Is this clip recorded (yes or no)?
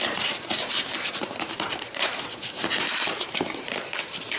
no